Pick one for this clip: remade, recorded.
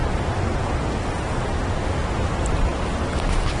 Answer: recorded